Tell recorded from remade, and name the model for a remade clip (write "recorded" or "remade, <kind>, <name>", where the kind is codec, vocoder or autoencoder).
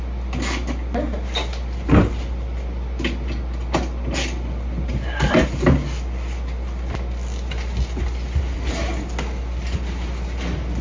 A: recorded